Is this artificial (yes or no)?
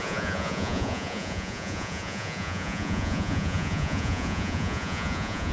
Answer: yes